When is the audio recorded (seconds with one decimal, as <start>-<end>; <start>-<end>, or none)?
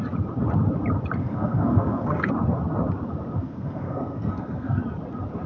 0.0-1.2; 2.3-3.4; 4.8-5.5